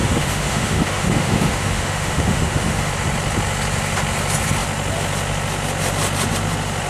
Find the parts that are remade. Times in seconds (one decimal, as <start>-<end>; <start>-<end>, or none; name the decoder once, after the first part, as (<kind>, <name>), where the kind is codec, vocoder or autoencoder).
0.0-2.9 (autoencoder, DAC-VAE)